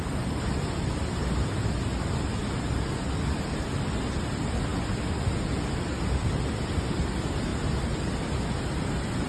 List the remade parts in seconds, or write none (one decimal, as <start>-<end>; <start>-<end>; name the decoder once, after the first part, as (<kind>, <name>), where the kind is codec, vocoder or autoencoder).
none